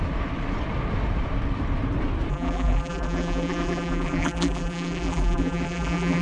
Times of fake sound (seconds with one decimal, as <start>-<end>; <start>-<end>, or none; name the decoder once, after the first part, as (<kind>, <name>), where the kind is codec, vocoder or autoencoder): 2.3-6.2 (vocoder, BigVGAN v2)